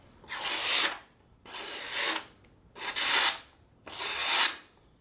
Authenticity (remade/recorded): recorded